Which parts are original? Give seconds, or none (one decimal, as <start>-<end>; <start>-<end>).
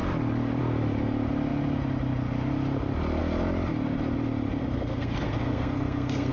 0.0-4.6